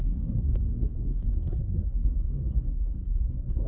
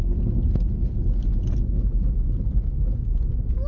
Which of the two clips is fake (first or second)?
first